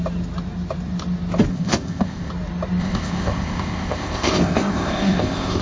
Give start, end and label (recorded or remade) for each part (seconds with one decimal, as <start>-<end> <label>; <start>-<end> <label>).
0.0-1.5 recorded; 1.5-2.3 remade; 2.3-2.8 recorded; 2.8-5.6 remade